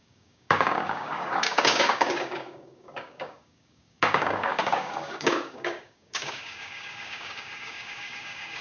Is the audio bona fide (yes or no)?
no